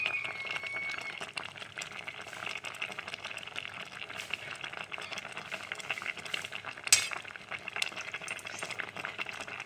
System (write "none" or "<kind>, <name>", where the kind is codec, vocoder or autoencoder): none